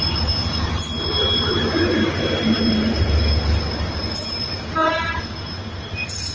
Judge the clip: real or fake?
real